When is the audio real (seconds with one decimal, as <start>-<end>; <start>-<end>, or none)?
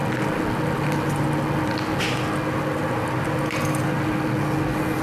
0.0-5.0